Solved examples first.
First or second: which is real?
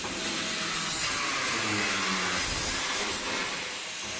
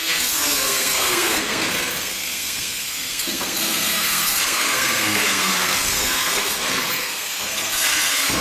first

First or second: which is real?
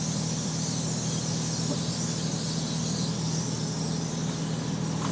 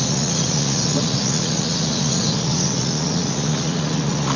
first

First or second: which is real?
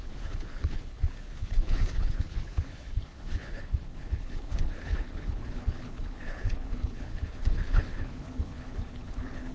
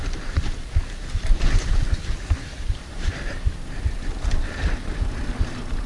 second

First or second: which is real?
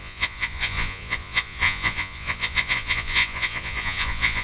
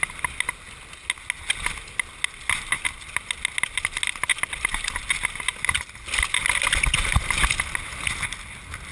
second